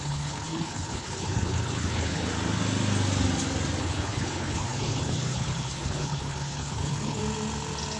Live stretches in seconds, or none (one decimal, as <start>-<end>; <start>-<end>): 2.3-3.8; 7.2-8.0